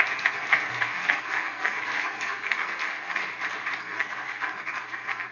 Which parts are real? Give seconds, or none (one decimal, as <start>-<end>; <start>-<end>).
3.2-3.8